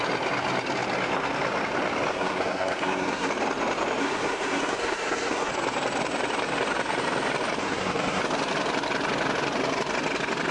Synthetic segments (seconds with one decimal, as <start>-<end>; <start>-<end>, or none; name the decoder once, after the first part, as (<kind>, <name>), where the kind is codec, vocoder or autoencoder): 2.1-3.3 (codec, SNAC); 4.0-5.5; 7.6-8.2